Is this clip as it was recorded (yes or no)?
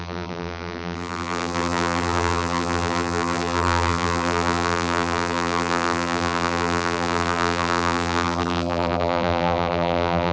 no